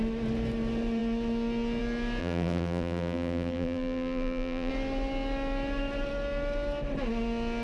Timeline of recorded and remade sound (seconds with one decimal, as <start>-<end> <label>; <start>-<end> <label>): 0.0-2.2 recorded; 2.2-4.7 remade; 4.7-7.6 recorded